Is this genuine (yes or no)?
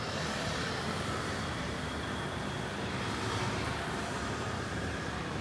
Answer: no